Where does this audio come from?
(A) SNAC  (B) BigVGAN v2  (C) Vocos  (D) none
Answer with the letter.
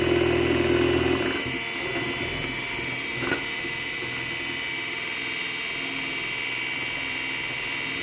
D